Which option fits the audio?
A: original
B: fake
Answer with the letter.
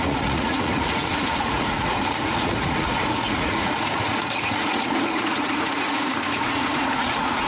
B